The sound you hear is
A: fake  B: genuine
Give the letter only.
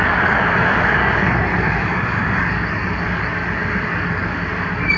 A